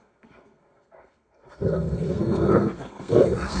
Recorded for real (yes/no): no